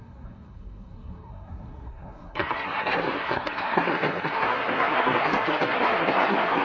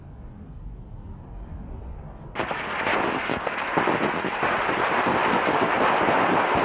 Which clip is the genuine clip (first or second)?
second